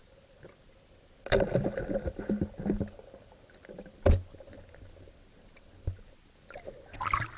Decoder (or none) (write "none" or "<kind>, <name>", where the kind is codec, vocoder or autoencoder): none